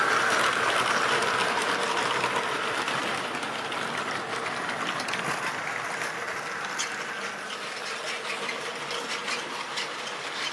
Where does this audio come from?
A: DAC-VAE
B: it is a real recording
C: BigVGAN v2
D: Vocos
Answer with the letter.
B